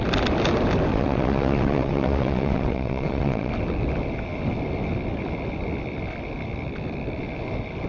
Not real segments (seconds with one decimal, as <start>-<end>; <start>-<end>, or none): 0.9-3.5